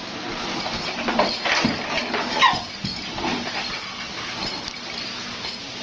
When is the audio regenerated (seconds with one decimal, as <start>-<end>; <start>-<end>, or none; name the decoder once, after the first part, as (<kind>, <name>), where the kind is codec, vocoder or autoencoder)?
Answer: none